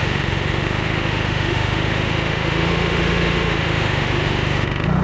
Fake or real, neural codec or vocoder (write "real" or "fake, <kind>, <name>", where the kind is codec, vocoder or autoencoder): fake, autoencoder, DAC-VAE